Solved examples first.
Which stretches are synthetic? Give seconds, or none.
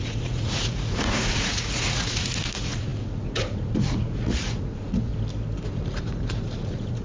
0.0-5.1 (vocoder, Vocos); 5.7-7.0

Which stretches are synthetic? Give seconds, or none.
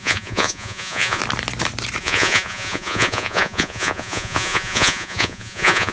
0.0-1.2 (vocoder, Vocos); 2.0-5.9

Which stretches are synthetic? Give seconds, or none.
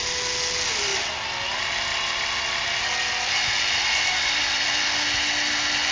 none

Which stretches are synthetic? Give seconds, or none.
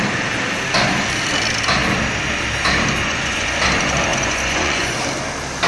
3.0-3.6 (vocoder, Vocos); 4.1-5.0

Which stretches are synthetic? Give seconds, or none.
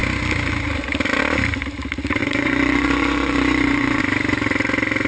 2.2-4.0 (vocoder, Vocos)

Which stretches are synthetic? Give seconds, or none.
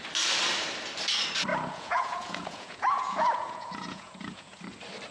1.5-4.6 (vocoder, Vocos)